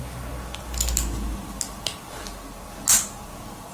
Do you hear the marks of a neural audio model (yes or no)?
no